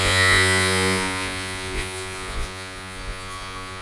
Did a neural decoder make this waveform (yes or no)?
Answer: yes